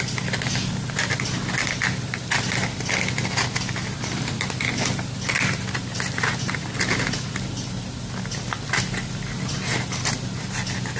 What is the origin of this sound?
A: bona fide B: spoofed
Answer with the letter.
A